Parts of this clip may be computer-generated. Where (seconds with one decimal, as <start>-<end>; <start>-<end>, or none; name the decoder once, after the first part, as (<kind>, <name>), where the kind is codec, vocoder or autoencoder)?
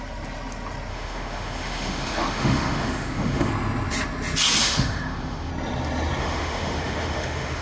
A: 0.9-3.5 (autoencoder, DAC-VAE); 4.6-5.5; 6.2-7.6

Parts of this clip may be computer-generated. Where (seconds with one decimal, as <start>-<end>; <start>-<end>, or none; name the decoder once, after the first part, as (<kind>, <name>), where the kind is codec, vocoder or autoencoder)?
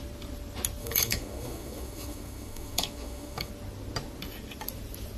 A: 0.8-3.5 (autoencoder, DAC-VAE)